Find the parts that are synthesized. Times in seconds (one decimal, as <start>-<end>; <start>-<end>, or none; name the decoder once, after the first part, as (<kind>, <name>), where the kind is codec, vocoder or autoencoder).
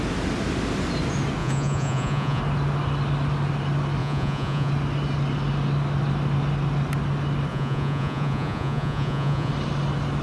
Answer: 1.4-2.4 (vocoder, Vocos); 4.0-4.7; 7.5-9.5